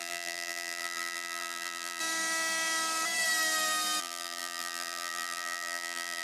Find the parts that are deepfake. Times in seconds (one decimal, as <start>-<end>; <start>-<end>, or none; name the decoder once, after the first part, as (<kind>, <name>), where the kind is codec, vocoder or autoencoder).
0.0-2.0 (vocoder, BigVGAN v2); 4.0-6.2